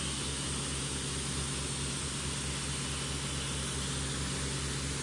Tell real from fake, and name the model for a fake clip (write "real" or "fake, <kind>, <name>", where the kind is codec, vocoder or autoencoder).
real